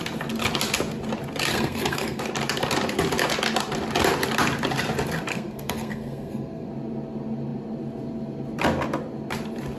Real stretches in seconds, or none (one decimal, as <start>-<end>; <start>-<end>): 0.0-1.5; 2.2-5.3; 6.7-9.8